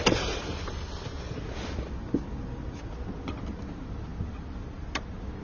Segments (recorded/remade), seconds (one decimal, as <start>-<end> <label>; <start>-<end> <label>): 0.0-5.4 recorded